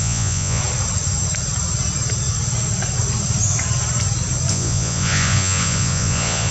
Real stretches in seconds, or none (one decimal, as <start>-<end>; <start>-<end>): 0.6-4.5